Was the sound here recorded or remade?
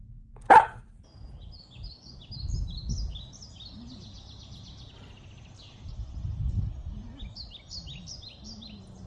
recorded